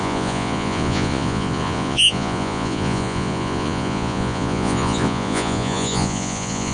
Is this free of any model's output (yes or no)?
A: no